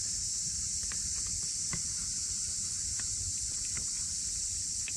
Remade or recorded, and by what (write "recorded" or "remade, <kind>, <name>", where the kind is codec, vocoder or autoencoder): recorded